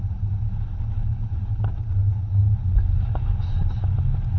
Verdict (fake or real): real